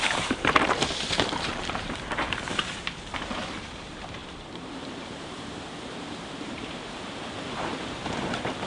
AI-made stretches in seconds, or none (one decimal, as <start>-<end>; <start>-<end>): 0.0-8.7